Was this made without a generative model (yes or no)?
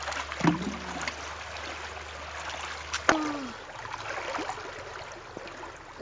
yes